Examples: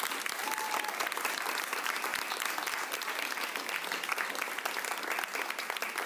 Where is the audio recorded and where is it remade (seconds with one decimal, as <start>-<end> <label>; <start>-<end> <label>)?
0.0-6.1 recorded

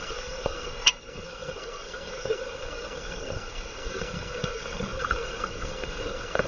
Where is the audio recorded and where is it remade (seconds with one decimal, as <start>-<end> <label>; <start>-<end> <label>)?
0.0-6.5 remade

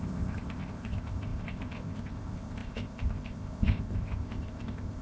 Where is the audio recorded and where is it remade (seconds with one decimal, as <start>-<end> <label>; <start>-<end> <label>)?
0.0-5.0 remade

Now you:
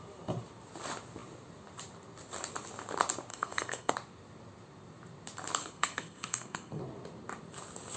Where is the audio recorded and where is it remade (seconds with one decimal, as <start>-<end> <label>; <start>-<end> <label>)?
0.0-3.3 recorded; 3.3-3.9 remade; 3.9-5.6 recorded; 5.6-6.8 remade; 6.8-8.0 recorded

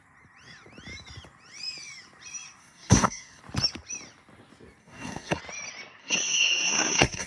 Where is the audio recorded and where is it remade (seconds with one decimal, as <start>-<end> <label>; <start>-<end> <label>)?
0.0-2.6 recorded; 2.6-3.4 remade; 3.4-4.8 recorded; 4.8-5.4 remade; 5.4-6.0 recorded; 6.0-7.3 remade

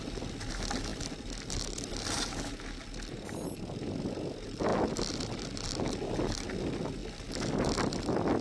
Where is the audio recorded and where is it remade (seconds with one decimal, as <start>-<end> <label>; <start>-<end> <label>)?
0.0-8.4 recorded